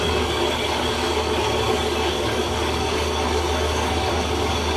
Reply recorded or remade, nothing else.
remade